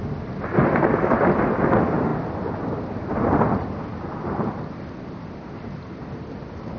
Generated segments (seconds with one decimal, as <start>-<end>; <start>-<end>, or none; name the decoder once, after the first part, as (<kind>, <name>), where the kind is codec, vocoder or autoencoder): none

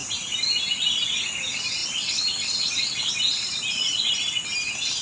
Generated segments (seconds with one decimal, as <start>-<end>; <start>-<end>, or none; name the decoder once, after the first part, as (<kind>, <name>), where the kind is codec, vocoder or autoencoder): none

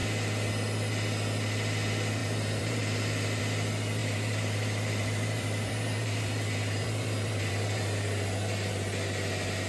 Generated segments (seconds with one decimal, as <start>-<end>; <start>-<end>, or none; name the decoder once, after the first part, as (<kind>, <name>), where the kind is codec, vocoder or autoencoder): 2.2-3.4 (vocoder, BigVGAN v2); 4.0-8.7